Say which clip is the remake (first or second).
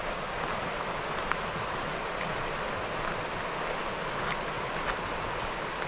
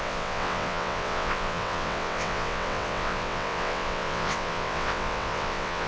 second